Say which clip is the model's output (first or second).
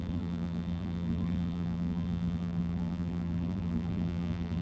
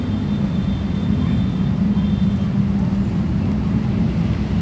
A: first